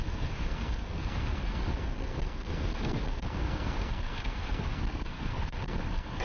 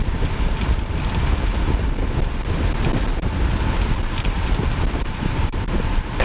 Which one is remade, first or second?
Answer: first